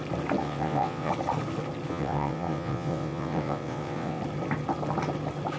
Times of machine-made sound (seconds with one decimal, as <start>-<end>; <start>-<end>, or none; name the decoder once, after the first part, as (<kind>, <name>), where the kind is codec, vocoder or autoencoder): 0.4-1.1 (vocoder, WaveNeXt); 1.9-4.2